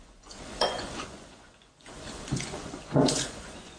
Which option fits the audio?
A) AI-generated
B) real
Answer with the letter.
A